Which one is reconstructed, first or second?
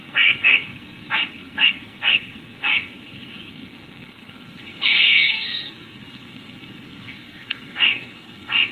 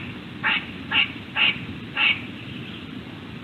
first